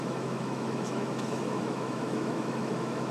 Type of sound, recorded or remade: remade